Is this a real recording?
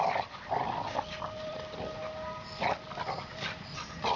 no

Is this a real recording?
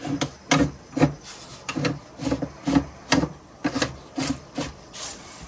yes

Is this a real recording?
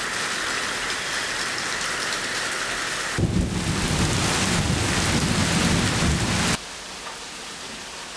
yes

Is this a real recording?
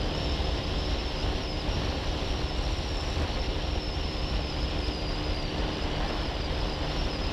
no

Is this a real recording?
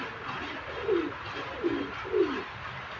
yes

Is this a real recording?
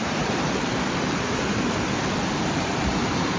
no